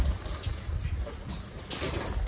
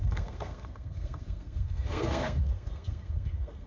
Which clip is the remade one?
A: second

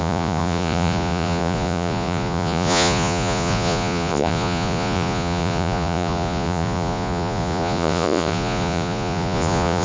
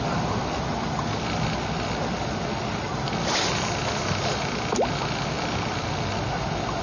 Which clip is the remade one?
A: first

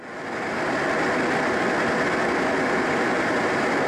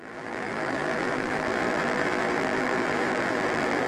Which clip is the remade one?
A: second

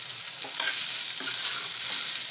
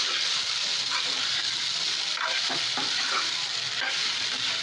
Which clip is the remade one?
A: second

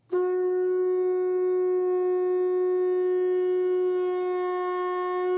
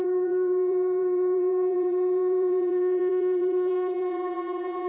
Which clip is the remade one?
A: second